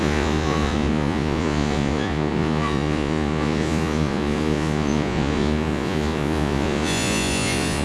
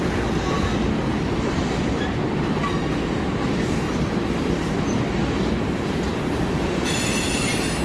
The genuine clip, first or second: second